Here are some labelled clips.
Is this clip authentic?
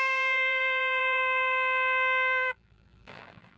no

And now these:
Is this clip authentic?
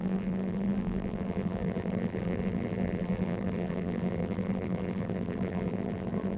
no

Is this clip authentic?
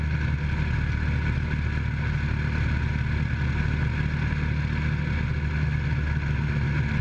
yes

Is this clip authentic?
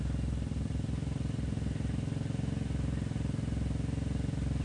yes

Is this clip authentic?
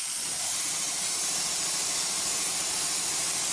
no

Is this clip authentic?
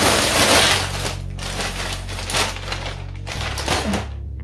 yes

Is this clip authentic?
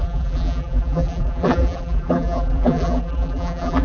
no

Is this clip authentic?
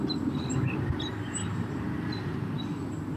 no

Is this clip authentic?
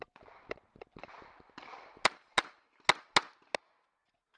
yes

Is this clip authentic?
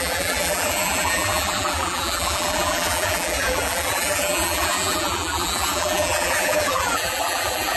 no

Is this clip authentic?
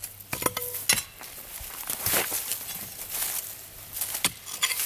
yes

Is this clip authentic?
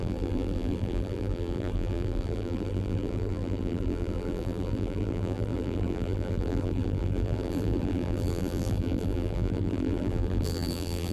no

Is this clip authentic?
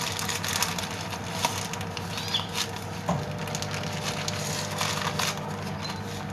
yes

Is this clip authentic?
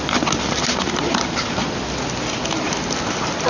no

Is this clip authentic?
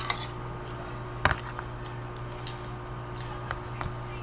yes